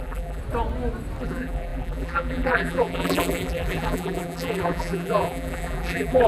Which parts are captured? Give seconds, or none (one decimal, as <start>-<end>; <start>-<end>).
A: 0.4-1.2